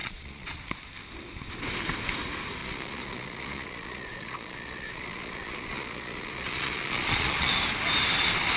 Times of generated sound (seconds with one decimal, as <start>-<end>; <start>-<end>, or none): 0.0-0.6; 2.6-7.5